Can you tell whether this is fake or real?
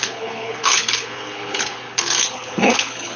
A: fake